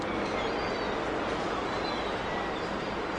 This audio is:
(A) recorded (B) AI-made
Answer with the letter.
A